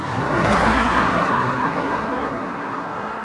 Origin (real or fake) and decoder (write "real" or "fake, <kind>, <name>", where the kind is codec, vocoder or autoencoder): fake, codec, SNAC